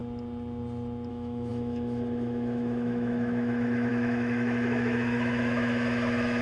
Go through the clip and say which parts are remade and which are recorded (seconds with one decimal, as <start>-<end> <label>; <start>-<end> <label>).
0.0-1.1 recorded; 1.1-6.4 remade